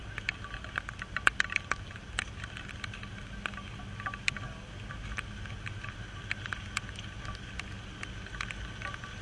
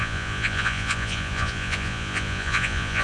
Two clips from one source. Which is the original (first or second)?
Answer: first